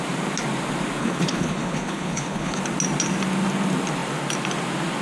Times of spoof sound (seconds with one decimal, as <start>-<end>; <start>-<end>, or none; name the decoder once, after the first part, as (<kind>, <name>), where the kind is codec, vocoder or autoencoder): 1.0-2.6 (codec, HILCodec)